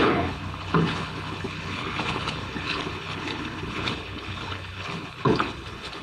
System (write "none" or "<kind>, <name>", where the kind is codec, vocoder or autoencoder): codec, HILCodec